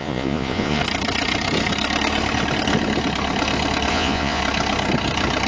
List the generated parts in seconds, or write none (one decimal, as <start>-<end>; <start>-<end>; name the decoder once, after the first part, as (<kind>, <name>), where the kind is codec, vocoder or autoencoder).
0.0-0.8 (vocoder, Vocos); 3.9-4.4